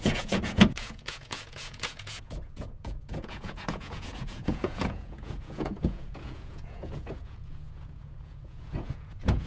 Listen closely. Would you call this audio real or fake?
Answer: fake